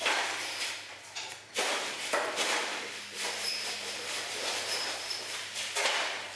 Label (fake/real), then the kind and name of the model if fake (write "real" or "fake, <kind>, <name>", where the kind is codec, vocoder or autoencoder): fake, vocoder, BigVGAN v2